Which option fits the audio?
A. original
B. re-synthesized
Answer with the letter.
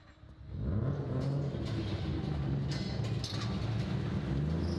A